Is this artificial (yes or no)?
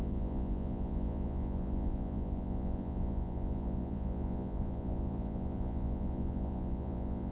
yes